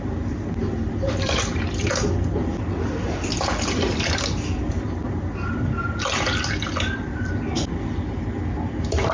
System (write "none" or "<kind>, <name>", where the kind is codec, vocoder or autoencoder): none